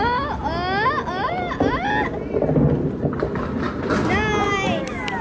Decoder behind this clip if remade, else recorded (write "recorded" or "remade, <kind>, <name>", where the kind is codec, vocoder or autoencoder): recorded